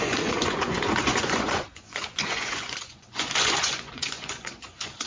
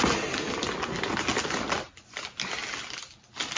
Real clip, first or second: second